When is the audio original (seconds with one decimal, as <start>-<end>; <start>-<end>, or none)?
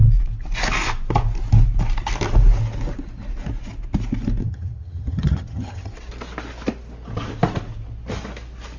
0.0-4.4; 5.9-8.8